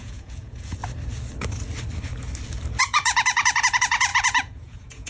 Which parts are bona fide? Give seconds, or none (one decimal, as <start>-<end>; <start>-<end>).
0.8-2.8